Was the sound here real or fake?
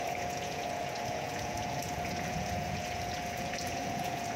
fake